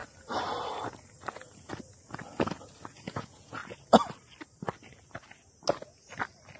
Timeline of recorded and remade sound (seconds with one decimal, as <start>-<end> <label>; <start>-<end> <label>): 0.0-3.0 recorded; 3.0-3.6 remade; 3.6-6.6 recorded